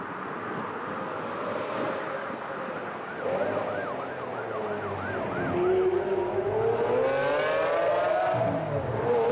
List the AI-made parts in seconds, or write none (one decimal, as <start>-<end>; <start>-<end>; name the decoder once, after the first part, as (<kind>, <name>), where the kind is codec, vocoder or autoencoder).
none